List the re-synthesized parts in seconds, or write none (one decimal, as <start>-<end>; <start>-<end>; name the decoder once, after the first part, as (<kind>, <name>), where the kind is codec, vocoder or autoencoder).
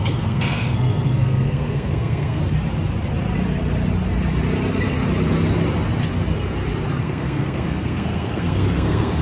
0.0-2.4 (codec, SNAC); 7.0-9.2